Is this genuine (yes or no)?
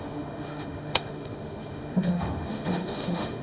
no